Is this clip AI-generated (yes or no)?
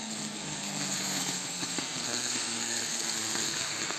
yes